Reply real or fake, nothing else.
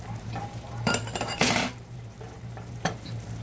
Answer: fake